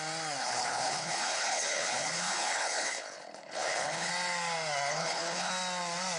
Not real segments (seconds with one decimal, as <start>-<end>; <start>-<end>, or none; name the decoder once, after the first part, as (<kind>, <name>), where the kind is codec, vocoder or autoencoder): 0.4-4.1 (codec, HILCodec); 4.9-5.5